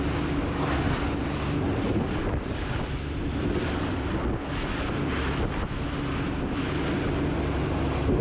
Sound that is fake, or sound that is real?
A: real